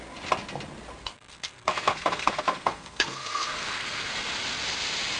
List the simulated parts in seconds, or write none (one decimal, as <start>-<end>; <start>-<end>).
1.0-4.1